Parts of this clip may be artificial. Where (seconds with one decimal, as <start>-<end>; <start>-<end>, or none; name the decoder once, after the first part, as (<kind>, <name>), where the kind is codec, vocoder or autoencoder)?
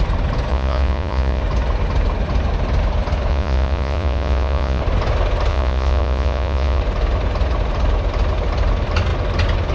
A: 0.5-1.4 (vocoder, Vocos); 3.3-4.8; 5.5-6.8